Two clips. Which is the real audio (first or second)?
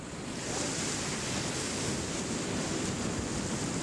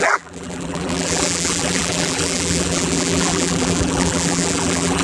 first